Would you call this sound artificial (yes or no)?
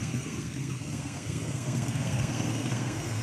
yes